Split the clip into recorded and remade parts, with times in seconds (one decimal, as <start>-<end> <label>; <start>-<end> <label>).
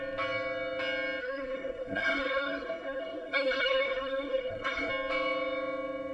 0.0-1.2 recorded; 1.2-4.9 remade; 4.9-6.1 recorded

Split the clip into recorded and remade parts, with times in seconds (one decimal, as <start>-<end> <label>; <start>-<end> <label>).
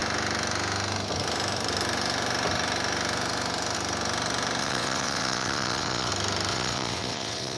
0.0-4.6 recorded; 4.6-6.1 remade; 6.1-6.5 recorded; 6.5-7.6 remade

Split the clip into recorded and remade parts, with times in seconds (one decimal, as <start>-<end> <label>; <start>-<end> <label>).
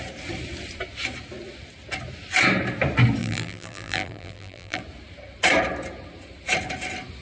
0.0-3.2 recorded; 3.2-4.8 remade; 4.8-7.2 recorded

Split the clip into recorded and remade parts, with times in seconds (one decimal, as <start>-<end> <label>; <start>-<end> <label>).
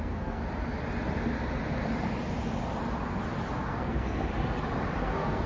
0.0-0.4 remade; 0.4-3.7 recorded; 3.7-4.3 remade; 4.3-5.0 recorded; 5.0-5.5 remade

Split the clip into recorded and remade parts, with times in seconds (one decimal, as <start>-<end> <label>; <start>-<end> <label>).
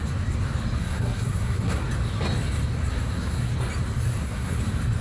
0.0-0.8 recorded; 0.8-1.8 remade; 1.8-2.9 recorded; 2.9-3.5 remade; 3.5-4.1 recorded; 4.1-4.6 remade; 4.6-5.0 recorded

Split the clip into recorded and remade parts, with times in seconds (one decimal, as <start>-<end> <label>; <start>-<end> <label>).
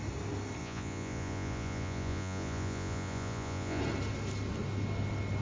0.0-0.6 recorded; 0.6-3.8 remade; 3.8-5.4 recorded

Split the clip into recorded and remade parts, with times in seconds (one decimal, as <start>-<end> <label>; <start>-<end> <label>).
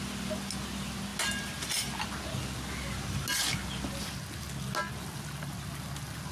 0.0-6.3 recorded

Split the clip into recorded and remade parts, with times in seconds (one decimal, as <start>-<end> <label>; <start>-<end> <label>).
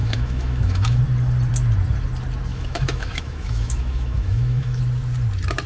0.0-1.0 remade; 1.0-2.5 recorded; 2.5-4.8 remade; 4.8-5.7 recorded